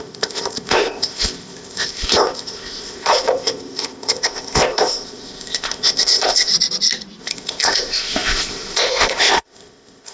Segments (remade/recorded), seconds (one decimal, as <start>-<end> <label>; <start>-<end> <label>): 0.0-6.5 remade; 6.5-7.2 recorded; 7.2-10.1 remade